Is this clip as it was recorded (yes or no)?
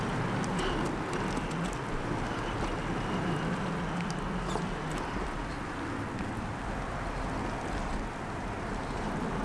yes